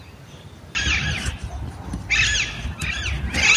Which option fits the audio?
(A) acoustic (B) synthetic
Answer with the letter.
A